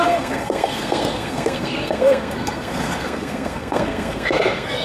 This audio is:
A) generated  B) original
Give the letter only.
A